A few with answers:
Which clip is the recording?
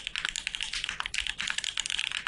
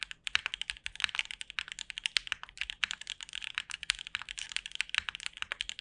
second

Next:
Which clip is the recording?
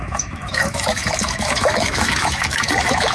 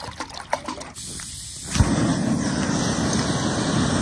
second